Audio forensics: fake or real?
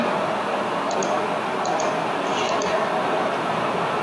real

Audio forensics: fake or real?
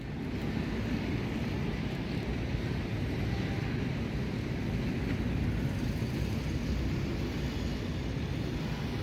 real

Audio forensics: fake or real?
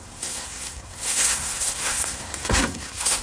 fake